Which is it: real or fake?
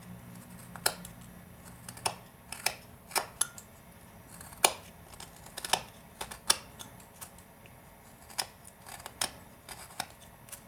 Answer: real